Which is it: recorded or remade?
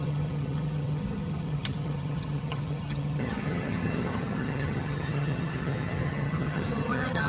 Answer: remade